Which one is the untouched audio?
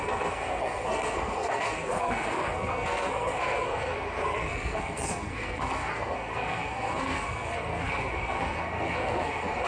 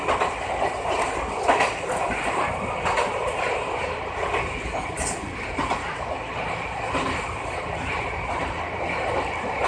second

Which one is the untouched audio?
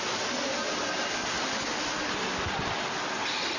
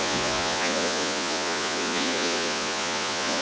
first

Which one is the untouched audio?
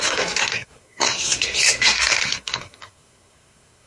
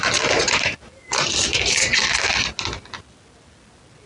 second